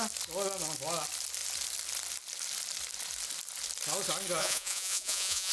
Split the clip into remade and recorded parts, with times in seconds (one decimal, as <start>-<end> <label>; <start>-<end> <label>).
0.0-4.4 recorded; 4.4-5.5 remade